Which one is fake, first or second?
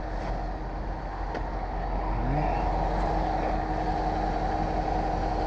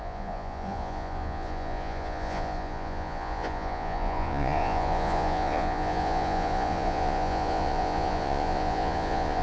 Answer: second